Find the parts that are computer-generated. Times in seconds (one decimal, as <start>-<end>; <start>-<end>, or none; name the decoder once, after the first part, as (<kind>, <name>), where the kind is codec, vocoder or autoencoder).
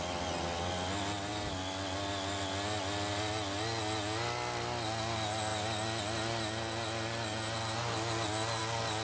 none